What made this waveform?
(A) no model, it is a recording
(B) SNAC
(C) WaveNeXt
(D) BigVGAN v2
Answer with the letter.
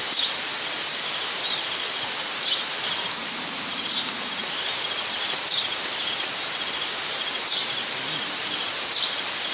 D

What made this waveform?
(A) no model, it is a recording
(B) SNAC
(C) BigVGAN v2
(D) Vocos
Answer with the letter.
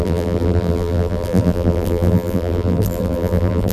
C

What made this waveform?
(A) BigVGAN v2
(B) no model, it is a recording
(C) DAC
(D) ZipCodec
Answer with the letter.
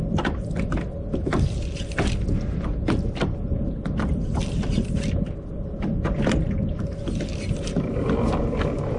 B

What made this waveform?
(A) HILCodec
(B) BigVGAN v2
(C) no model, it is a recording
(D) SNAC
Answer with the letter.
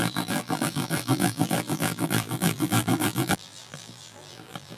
B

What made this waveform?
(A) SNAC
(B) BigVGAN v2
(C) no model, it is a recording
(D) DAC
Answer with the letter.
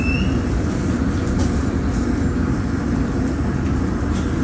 C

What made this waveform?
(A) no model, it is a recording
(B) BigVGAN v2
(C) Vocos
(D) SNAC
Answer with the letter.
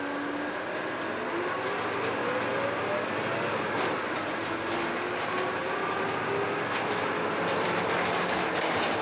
A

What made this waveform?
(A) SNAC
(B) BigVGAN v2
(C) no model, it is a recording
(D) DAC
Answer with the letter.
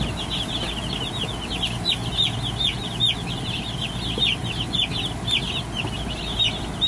C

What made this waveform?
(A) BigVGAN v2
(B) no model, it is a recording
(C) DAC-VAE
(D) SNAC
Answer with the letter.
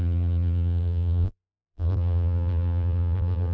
A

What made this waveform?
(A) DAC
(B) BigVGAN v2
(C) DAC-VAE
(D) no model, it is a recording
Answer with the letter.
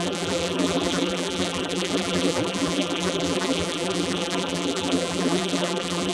B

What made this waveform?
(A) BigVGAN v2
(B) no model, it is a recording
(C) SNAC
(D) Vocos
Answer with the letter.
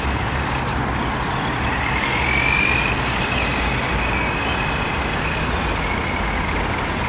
B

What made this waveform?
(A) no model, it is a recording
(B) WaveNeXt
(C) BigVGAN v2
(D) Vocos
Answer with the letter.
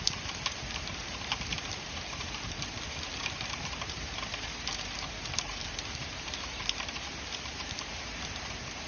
C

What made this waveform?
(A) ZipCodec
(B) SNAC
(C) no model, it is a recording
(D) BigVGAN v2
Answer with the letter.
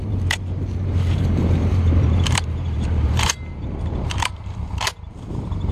D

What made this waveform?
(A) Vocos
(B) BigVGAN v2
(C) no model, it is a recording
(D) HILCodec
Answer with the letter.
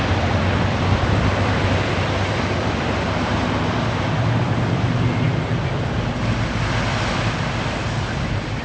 B